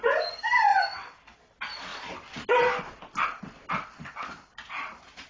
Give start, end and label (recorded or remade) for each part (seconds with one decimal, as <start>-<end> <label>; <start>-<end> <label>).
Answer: 0.0-5.3 recorded